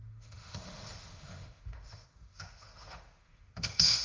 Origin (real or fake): fake